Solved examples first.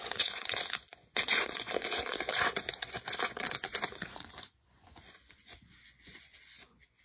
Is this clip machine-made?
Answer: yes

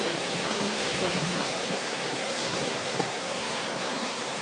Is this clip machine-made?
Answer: yes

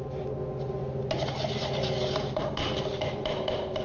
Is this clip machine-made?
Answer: no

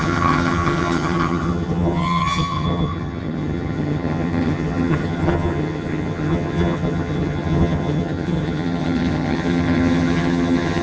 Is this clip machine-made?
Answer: yes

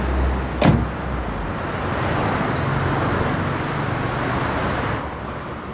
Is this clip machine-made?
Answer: no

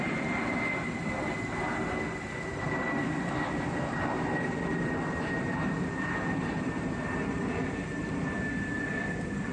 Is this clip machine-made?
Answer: no